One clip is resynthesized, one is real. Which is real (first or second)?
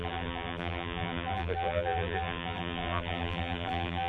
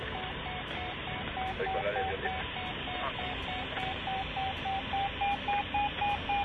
second